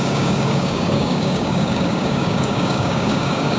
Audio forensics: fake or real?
fake